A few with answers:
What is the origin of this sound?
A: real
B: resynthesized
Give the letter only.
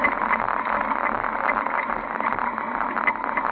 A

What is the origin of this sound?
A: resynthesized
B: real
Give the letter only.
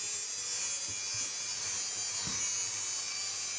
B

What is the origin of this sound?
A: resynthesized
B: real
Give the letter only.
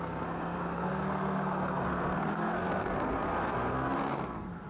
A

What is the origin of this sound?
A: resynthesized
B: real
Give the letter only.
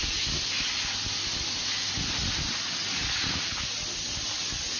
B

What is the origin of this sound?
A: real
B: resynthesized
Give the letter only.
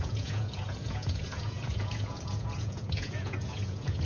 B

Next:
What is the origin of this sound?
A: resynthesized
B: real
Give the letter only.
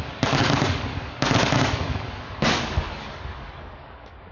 A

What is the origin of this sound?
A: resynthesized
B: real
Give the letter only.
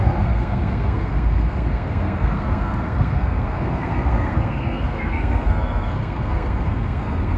A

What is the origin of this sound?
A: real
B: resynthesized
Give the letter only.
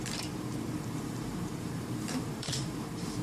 B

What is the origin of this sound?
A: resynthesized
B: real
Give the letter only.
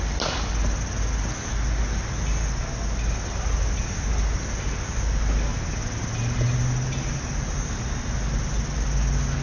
B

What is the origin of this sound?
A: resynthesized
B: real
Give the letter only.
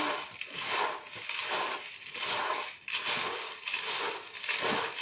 B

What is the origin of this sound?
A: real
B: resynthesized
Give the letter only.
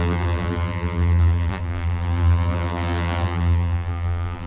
B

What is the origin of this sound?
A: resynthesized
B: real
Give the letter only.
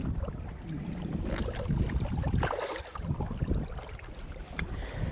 B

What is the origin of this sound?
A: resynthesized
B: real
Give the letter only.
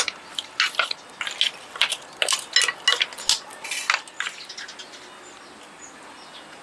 B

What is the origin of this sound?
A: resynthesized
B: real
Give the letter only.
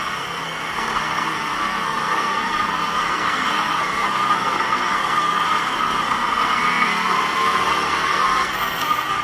A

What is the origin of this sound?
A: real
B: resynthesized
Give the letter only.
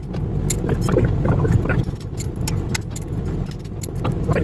A